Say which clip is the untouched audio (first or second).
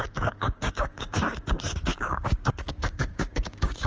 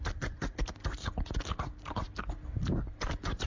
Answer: second